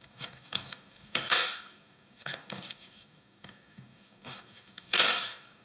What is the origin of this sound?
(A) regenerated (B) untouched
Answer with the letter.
A